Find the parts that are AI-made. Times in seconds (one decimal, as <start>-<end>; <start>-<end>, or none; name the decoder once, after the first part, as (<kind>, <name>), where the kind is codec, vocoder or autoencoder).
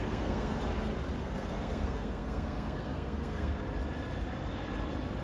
0.0-0.6 (codec, SNAC); 1.2-3.6